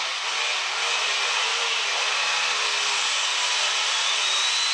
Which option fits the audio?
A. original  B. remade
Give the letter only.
A